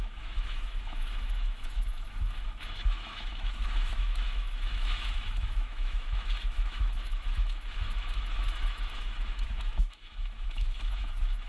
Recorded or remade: remade